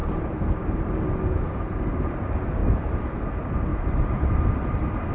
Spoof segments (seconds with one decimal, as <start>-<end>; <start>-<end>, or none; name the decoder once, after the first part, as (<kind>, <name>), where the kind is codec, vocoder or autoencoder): 0.0-0.8 (vocoder, BigVGAN v2); 2.6-3.1; 3.7-4.3